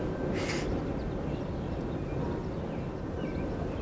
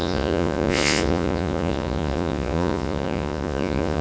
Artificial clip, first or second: second